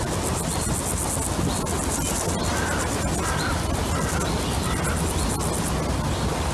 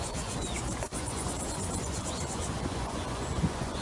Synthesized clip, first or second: second